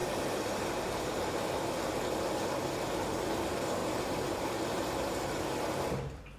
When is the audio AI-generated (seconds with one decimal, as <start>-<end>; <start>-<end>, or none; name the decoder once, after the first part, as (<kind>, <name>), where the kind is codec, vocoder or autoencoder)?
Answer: 0.0-2.1 (vocoder, BigVGAN v2); 3.8-5.8